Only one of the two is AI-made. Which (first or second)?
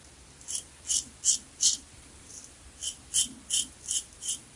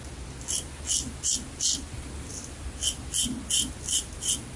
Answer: first